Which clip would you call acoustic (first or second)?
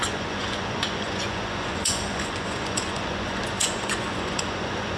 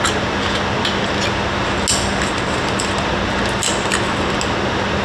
second